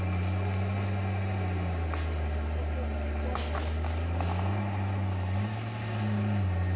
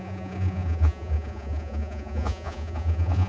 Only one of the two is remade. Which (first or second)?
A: second